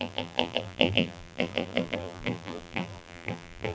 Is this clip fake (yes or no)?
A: yes